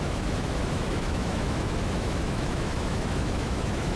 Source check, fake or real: fake